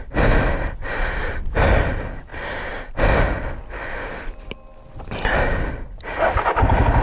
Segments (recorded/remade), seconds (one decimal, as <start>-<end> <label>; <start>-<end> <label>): 0.0-7.0 recorded